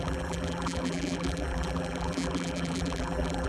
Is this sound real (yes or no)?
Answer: no